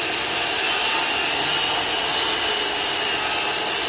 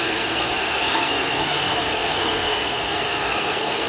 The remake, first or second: second